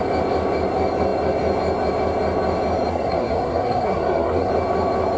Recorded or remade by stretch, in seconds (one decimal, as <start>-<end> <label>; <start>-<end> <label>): 0.0-2.9 recorded; 2.9-4.5 remade; 4.5-5.2 recorded